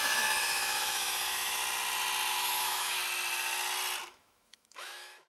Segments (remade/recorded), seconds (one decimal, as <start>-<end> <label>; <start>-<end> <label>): 0.0-1.6 remade; 1.6-2.3 recorded; 2.3-3.0 remade; 3.0-4.1 recorded; 4.1-5.3 remade